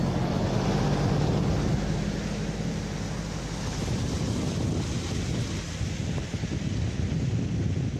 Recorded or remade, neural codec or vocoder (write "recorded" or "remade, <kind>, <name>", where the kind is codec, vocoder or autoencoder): recorded